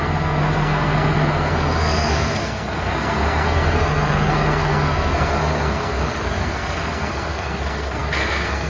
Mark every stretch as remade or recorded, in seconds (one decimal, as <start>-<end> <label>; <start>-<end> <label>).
0.0-8.7 remade